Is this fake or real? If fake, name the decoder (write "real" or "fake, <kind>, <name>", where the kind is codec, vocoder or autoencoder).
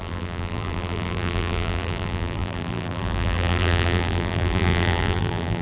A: fake, vocoder, BigVGAN v2